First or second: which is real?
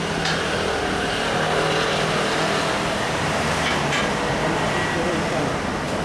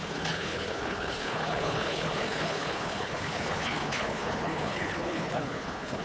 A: first